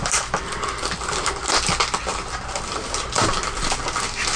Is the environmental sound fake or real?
real